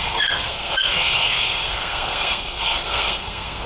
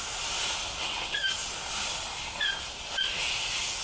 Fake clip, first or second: first